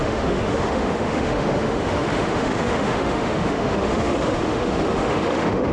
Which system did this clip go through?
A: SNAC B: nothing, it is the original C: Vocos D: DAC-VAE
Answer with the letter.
D